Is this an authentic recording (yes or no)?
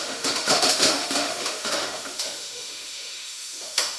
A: no